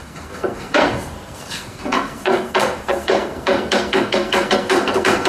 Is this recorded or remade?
remade